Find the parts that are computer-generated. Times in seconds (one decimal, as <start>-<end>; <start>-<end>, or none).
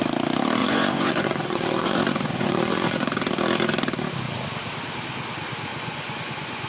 0.6-3.3; 5.7-6.7